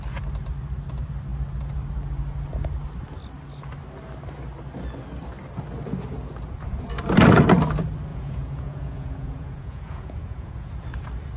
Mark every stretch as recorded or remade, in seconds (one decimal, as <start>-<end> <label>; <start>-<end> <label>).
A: 0.0-8.1 recorded; 8.1-10.7 remade; 10.7-11.4 recorded